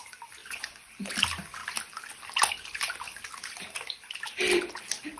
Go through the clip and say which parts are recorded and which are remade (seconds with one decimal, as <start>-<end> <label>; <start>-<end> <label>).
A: 0.0-0.4 recorded; 0.4-1.1 remade; 1.1-5.2 recorded